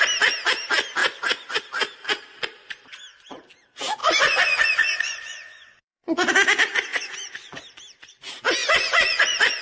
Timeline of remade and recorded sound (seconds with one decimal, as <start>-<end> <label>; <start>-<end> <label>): 0.0-1.0 recorded; 1.0-1.6 remade; 1.6-4.0 recorded; 4.0-6.3 remade; 6.3-6.9 recorded; 6.9-7.6 remade; 7.6-8.6 recorded; 8.6-9.6 remade